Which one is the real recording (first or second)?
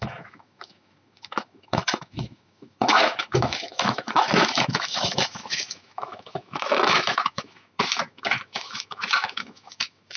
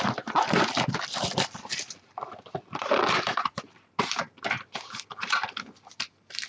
second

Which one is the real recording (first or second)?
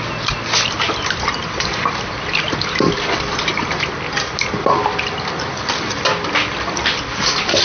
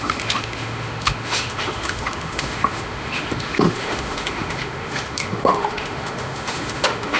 first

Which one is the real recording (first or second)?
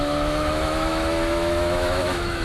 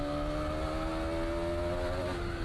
second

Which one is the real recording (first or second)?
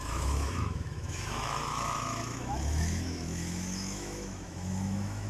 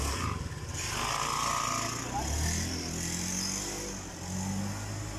second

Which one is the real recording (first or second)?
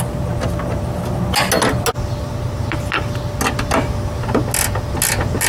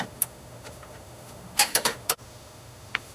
first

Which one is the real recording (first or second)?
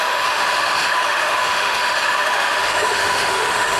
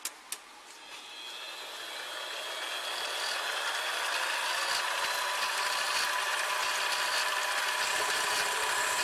second